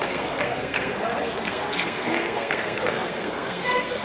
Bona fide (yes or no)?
no